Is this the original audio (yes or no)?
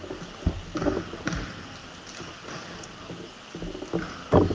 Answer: yes